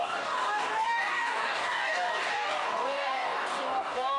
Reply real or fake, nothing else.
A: fake